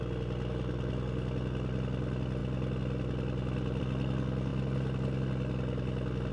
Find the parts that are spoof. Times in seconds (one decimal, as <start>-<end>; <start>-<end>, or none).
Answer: none